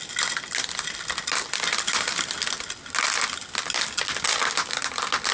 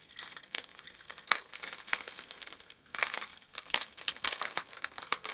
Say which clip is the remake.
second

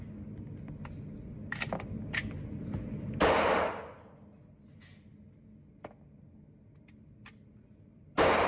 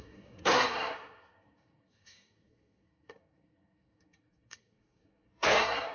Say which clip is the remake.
second